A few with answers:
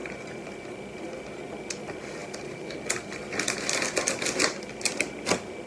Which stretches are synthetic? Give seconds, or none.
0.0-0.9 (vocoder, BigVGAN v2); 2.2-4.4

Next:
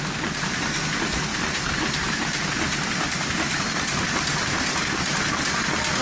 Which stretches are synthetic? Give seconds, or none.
1.3-3.7 (vocoder, BigVGAN v2)

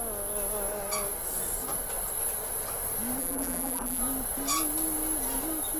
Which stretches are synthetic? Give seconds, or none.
3.2-4.0 (vocoder, BigVGAN v2)